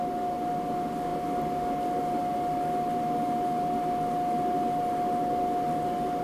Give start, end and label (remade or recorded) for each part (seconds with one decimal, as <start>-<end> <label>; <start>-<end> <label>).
0.0-6.2 recorded